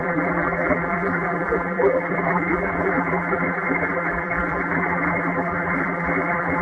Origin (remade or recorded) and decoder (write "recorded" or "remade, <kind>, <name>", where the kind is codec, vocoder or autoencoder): remade, vocoder, BigVGAN v2